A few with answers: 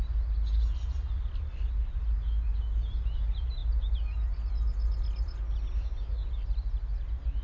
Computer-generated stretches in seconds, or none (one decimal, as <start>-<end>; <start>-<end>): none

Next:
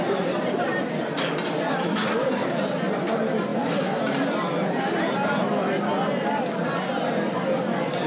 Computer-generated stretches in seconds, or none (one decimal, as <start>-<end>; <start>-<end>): none

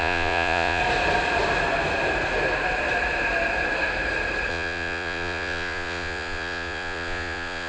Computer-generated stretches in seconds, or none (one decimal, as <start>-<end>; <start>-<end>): 0.0-0.8; 4.5-7.7

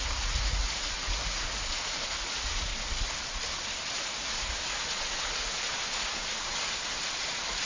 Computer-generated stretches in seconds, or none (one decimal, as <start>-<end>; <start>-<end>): 0.0-2.7; 3.9-7.7